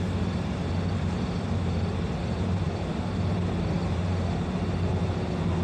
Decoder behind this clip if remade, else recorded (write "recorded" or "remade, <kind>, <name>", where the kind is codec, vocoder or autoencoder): remade, vocoder, BigVGAN v2